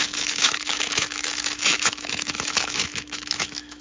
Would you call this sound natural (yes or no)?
no